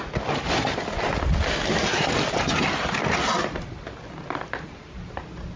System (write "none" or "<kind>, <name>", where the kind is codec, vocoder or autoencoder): none